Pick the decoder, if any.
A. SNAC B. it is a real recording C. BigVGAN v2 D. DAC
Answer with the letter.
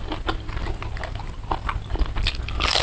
B